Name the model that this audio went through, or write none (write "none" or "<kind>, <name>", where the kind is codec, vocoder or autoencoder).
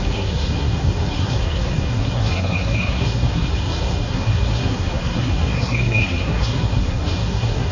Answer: codec, SNAC